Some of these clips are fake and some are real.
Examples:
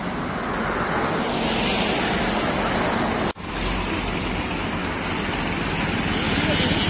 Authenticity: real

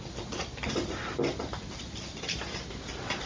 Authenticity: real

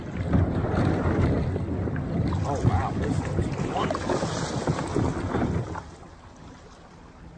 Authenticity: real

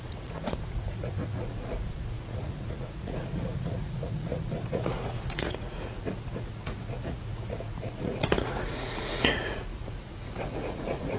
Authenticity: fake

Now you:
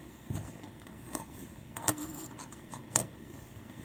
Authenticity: fake